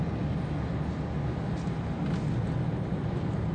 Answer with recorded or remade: recorded